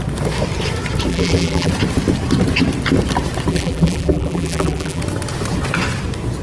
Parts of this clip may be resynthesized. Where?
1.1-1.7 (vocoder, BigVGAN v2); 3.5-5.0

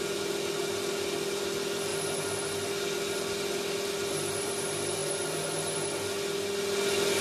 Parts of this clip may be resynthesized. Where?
none

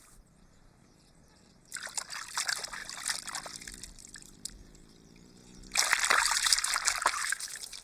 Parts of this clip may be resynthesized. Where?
0.0-2.8 (vocoder, BigVGAN v2); 3.4-5.4; 6.2-7.8